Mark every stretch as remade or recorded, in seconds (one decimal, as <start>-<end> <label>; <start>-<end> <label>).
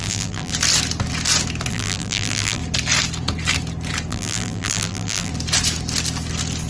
0.0-0.5 remade; 0.5-1.7 recorded; 1.7-2.6 remade; 2.6-4.1 recorded; 4.1-5.3 remade; 5.3-6.7 recorded